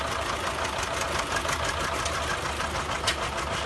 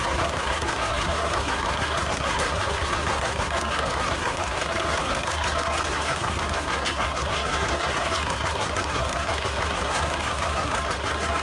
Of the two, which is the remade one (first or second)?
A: second